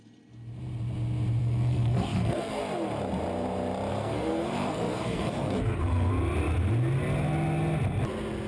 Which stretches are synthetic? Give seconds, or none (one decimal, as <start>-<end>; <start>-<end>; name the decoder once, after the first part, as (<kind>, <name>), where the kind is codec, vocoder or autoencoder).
1.4-2.6 (codec, SNAC); 3.9-6.1